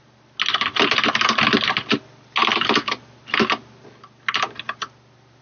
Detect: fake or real real